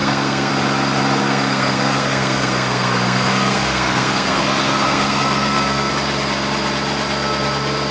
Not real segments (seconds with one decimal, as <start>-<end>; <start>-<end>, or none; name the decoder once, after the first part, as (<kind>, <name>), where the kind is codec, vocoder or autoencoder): 0.0-0.5 (codec, SNAC); 1.2-5.9